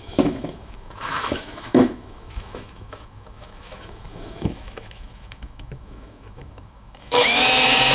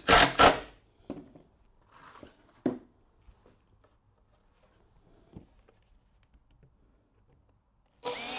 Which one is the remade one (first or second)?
first